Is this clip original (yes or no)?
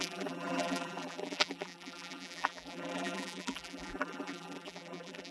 no